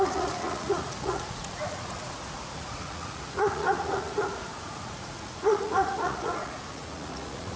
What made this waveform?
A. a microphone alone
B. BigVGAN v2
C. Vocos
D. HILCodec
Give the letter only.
C